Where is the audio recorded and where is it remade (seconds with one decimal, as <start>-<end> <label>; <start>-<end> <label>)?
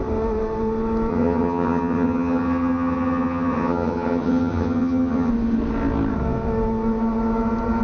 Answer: 0.0-1.1 recorded; 1.1-5.3 remade; 5.3-7.8 recorded